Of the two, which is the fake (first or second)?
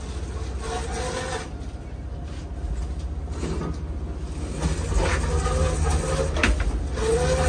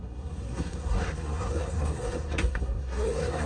second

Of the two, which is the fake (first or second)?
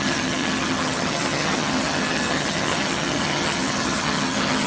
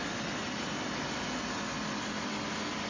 first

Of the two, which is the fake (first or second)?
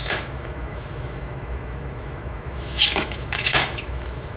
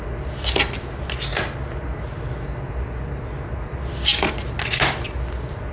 first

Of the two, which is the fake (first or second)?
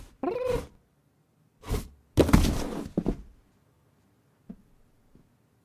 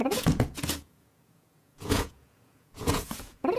second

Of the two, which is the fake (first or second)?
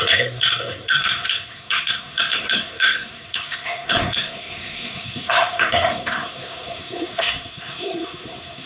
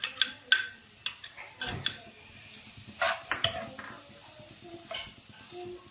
first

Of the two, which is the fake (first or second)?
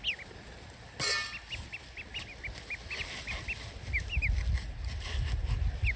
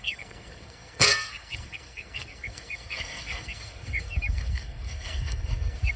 second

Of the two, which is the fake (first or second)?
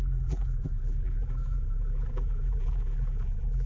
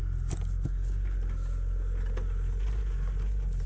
first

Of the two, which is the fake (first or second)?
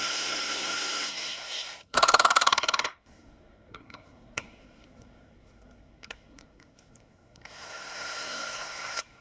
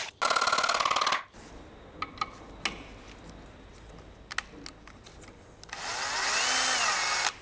first